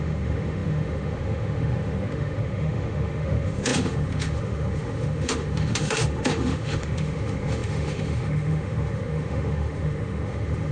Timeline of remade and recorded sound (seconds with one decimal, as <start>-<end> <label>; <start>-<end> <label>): 0.0-10.7 remade